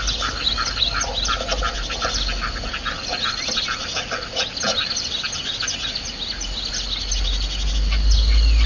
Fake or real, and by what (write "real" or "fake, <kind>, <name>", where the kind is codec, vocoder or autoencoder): real